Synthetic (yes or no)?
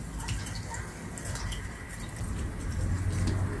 no